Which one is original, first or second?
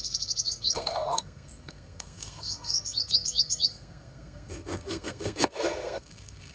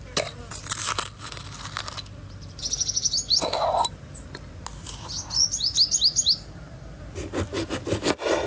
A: second